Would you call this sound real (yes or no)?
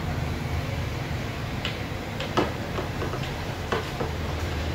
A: no